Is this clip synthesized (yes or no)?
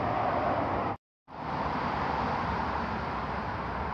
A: no